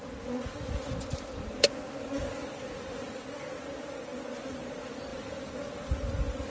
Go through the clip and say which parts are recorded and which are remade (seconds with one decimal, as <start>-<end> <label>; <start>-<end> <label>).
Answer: 0.0-6.5 recorded